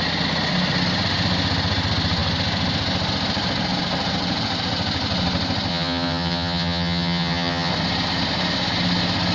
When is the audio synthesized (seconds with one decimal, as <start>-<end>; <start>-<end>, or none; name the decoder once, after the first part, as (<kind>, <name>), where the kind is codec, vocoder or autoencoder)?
5.7-7.7 (vocoder, HiFi-GAN)